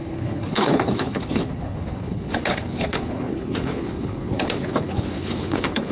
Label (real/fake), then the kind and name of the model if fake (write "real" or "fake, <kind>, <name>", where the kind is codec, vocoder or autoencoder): fake, codec, HILCodec